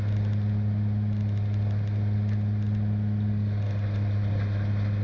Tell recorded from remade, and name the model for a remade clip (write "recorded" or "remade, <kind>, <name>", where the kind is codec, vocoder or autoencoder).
recorded